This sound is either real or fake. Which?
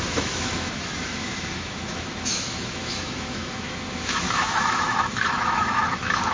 fake